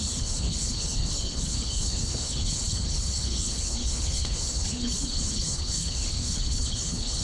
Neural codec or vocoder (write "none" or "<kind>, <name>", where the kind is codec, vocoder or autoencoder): codec, HILCodec